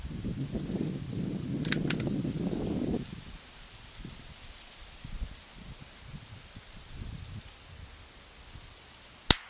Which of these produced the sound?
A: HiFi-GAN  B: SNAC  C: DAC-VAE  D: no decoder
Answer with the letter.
D